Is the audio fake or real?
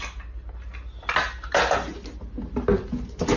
real